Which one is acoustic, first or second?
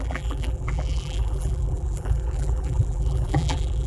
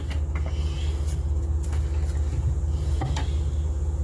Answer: second